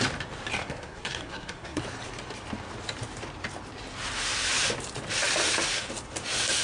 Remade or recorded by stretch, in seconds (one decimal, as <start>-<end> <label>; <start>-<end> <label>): 0.0-0.6 recorded; 0.6-1.8 remade; 1.8-6.6 recorded